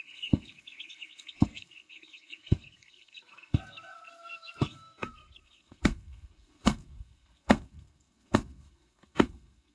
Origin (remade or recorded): remade